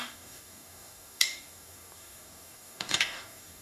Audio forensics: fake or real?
fake